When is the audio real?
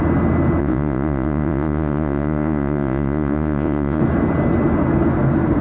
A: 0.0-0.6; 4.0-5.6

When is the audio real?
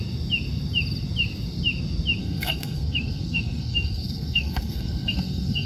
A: 0.0-2.2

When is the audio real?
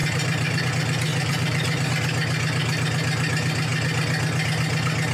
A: 0.7-1.1; 1.9-5.1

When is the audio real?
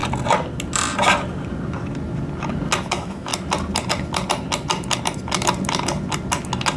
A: 0.0-2.9; 3.3-6.8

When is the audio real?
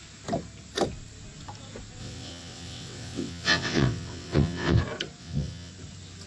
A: 0.0-2.0; 4.8-5.2; 5.7-6.3